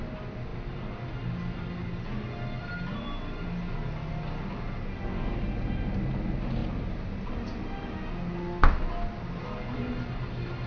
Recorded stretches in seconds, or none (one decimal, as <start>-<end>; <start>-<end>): 0.0-10.7